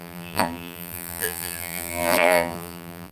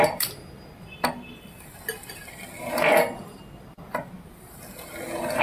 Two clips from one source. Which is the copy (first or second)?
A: first